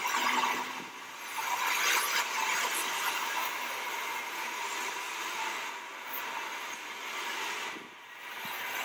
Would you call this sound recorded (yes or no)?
yes